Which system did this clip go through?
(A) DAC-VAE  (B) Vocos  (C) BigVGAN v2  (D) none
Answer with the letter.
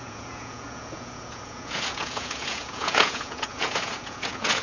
B